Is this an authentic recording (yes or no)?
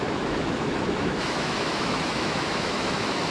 no